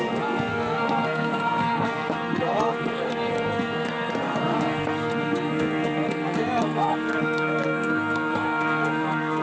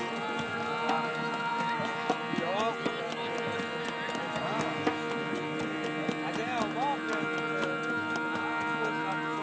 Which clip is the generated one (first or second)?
first